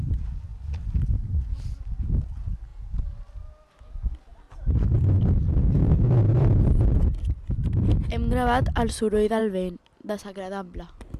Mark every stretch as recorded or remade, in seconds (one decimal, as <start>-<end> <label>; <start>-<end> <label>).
0.0-11.2 recorded